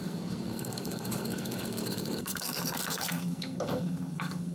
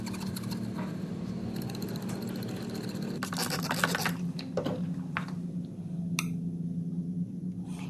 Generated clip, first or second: first